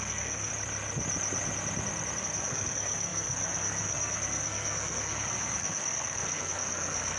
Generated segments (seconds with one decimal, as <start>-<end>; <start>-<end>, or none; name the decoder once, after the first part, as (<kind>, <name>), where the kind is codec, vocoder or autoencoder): 0.0-0.5 (codec, SNAC); 2.2-7.2